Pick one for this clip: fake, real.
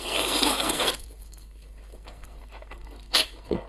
fake